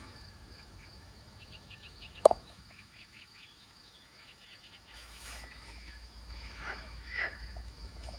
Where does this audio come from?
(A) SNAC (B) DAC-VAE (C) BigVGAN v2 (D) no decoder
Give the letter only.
B